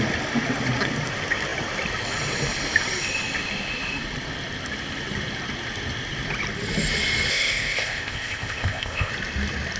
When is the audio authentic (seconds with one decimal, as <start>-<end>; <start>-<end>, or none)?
0.0-7.3; 9.1-9.8